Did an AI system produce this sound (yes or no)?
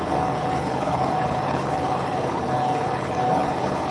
yes